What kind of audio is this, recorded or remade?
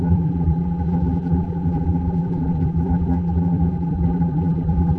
remade